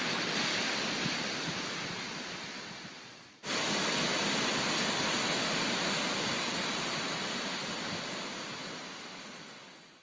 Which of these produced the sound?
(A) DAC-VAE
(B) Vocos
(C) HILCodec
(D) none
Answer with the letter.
D